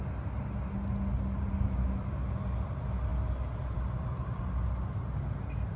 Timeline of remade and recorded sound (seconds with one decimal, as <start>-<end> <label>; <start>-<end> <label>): 0.0-3.1 recorded; 3.1-4.4 remade; 4.4-5.8 recorded